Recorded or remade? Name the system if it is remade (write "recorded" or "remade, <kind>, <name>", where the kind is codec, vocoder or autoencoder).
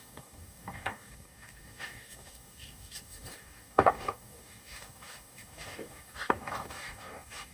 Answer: remade, codec, DAC